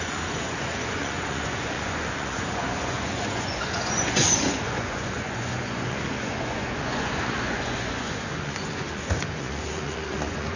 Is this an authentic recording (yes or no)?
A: no